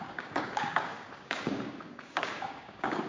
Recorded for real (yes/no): no